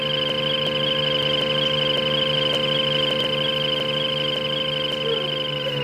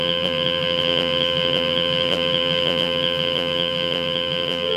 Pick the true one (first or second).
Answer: first